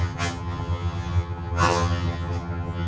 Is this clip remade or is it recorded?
remade